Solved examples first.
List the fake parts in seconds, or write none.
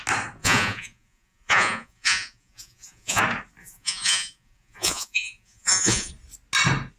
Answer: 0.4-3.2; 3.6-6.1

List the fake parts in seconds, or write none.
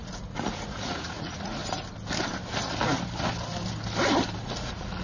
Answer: 0.0-1.6; 4.4-5.0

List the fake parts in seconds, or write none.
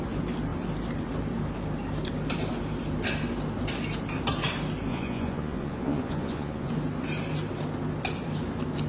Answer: 4.9-6.7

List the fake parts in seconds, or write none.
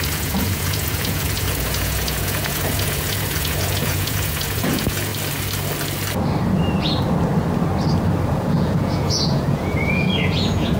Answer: 0.0-5.1; 8.3-10.8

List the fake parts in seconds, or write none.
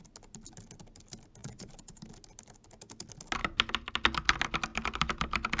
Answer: 1.4-2.0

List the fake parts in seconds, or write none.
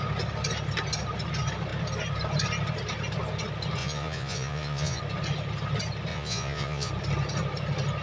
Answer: 3.8-5.0; 6.1-6.9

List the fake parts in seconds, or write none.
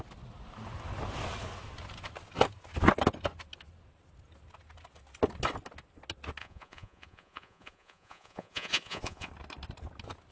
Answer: 6.4-9.3